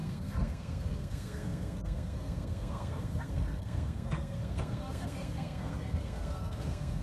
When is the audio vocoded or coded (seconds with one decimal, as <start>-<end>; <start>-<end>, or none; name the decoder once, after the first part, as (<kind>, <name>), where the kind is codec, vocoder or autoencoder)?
0.0-7.0 (codec, SNAC)